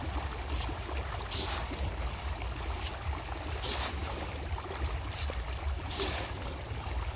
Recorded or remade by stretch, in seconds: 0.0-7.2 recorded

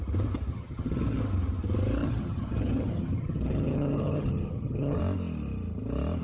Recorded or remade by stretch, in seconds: 0.0-0.5 recorded; 0.5-1.2 remade; 1.2-2.0 recorded; 2.0-5.0 remade; 5.0-6.2 recorded

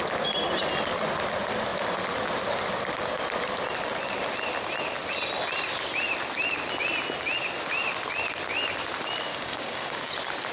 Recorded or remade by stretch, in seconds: 0.0-9.3 recorded; 9.3-10.1 remade; 10.1-10.5 recorded

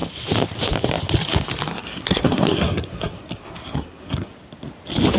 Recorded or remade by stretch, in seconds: 0.0-1.7 recorded; 1.7-4.3 remade; 4.3-5.2 recorded

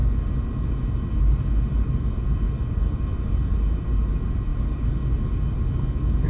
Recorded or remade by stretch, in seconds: 0.0-6.3 recorded

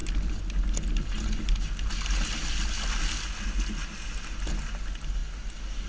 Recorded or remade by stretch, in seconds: 0.0-5.9 recorded